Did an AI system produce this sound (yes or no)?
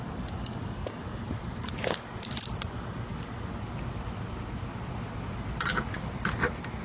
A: no